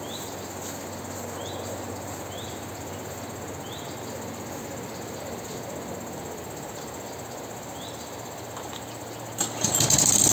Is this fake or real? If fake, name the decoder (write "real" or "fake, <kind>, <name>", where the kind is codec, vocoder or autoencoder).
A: real